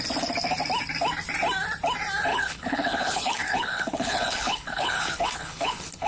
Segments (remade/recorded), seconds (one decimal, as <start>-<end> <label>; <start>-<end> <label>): 0.0-2.3 recorded; 2.3-6.1 remade